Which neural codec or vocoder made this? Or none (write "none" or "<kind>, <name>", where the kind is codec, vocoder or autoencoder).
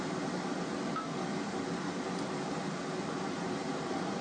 none